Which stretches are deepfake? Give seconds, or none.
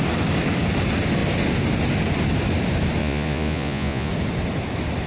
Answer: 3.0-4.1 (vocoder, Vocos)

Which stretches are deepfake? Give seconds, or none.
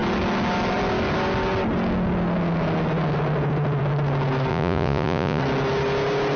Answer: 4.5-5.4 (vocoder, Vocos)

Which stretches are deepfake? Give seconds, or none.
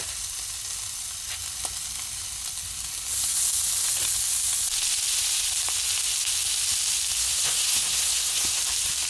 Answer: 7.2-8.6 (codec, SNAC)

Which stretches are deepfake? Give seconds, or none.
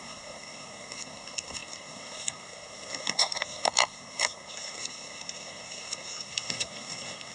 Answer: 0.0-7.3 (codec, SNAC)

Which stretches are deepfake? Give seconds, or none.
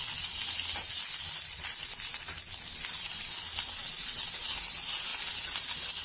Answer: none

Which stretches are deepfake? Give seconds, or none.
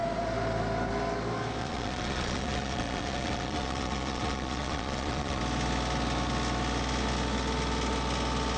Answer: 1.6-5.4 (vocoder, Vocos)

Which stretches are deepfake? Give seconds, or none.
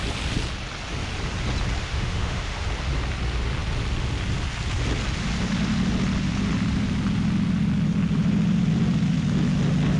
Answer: 1.8-2.7 (autoencoder, DAC-VAE)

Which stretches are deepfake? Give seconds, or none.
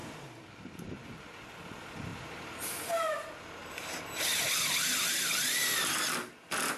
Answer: none